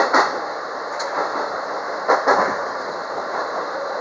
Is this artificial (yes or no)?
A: no